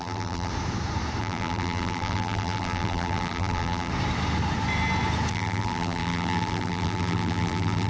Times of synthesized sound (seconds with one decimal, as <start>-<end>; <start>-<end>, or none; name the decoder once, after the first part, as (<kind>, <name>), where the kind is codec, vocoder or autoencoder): 0.0-0.5 (vocoder, BigVGAN v2); 1.2-3.9; 5.3-7.9